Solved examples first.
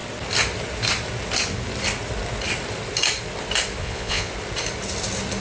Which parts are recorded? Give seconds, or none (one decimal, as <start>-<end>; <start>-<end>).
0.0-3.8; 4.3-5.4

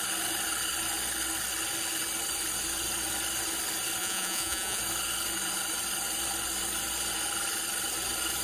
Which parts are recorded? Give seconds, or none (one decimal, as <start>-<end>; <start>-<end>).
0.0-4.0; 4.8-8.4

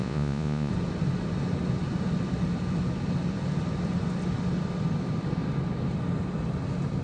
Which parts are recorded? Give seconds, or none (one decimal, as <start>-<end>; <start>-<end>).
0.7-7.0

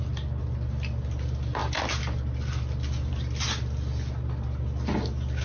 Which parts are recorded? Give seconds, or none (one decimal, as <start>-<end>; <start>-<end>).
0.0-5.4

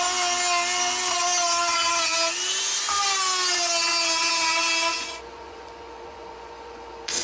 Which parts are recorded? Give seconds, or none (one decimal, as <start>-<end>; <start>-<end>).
0.0-4.9

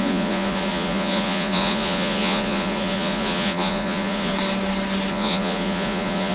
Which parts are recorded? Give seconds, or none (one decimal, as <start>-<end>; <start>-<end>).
4.3-5.1